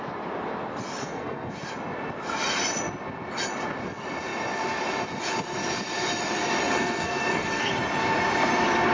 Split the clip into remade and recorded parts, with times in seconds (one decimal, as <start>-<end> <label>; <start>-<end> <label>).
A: 0.0-1.0 recorded; 1.0-1.5 remade; 1.5-6.7 recorded; 6.7-7.7 remade; 7.7-8.9 recorded